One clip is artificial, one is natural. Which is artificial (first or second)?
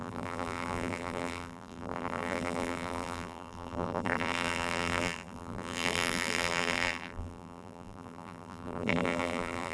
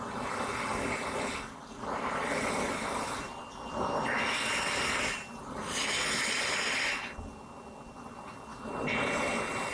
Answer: first